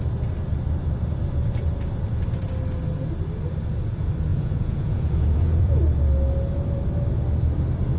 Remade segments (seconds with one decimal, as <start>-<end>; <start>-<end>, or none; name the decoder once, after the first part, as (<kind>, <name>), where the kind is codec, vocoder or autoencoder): 4.3-5.8 (vocoder, Vocos)